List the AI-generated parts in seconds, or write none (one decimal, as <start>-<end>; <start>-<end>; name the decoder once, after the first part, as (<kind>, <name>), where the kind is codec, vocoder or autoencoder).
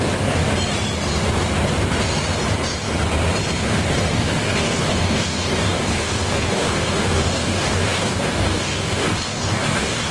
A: 0.0-0.4 (codec, DAC); 4.1-10.1